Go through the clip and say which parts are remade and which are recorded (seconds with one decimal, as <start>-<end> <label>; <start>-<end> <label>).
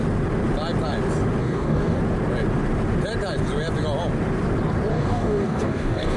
0.0-1.4 recorded; 1.4-2.0 remade; 2.0-4.9 recorded; 4.9-6.2 remade